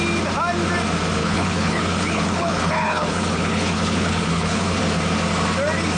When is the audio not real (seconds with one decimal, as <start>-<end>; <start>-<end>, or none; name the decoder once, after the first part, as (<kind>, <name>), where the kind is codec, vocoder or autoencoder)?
1.2-4.8 (codec, HILCodec)